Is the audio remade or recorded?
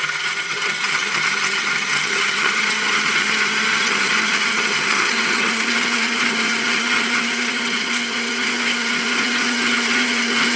remade